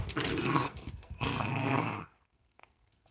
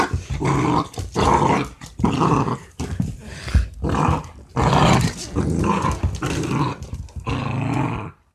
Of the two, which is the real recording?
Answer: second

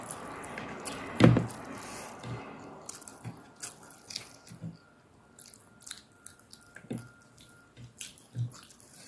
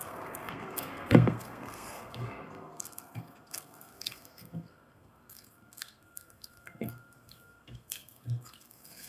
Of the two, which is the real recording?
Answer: first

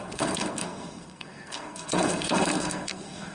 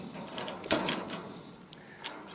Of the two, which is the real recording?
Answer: second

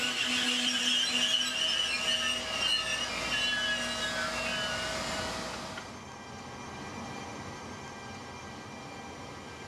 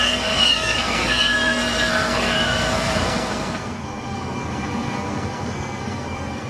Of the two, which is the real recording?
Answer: first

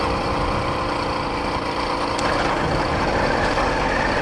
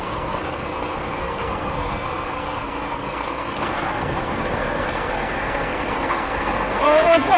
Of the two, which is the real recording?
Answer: first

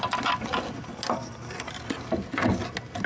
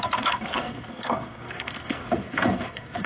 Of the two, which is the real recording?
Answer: first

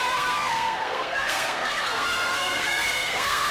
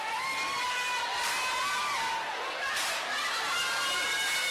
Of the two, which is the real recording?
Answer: second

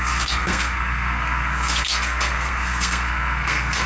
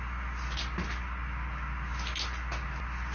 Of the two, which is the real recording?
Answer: second